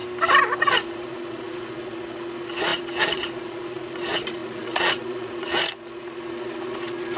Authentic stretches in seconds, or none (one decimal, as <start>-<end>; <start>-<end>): 0.0-0.6